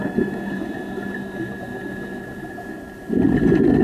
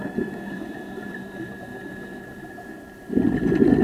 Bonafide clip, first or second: first